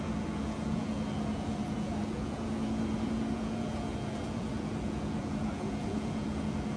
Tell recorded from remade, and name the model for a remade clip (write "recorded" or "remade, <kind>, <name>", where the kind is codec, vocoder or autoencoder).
remade, vocoder, Vocos